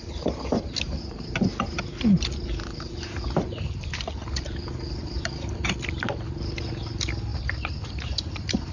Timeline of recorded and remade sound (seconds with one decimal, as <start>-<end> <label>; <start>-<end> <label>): 0.0-5.0 recorded; 5.0-6.7 remade; 6.7-8.7 recorded